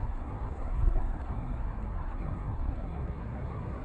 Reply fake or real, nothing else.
fake